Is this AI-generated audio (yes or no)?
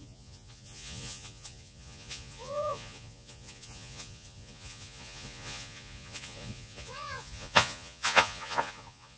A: yes